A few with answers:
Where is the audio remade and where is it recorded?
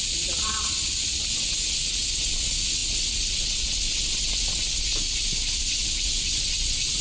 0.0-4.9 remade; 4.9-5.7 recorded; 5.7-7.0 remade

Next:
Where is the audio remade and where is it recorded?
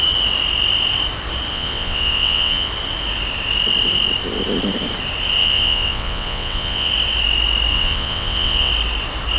0.0-1.5 recorded; 1.5-2.7 remade; 2.7-5.4 recorded; 5.4-6.9 remade; 6.9-7.7 recorded; 7.7-8.7 remade; 8.7-9.4 recorded